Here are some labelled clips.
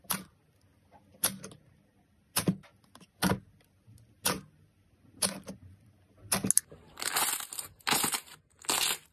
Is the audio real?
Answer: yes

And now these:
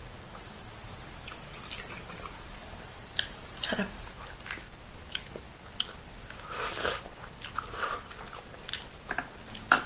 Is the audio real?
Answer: yes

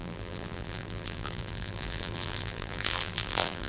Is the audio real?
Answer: no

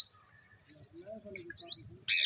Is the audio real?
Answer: yes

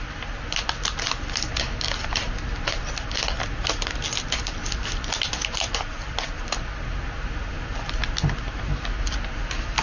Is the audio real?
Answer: yes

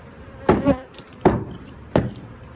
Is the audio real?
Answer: yes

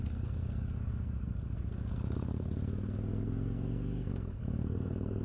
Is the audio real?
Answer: no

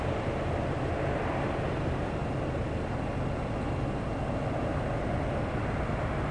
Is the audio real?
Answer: yes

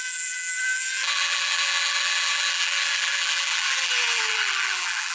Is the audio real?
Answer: no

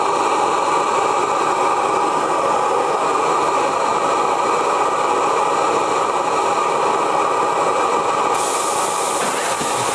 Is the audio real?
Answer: yes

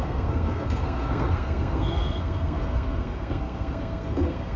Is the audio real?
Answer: no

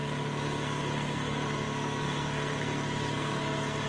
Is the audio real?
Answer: no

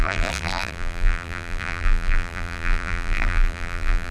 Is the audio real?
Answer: no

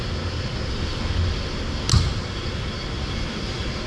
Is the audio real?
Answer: yes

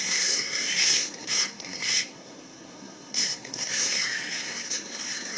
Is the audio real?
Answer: no